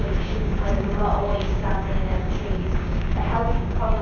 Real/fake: fake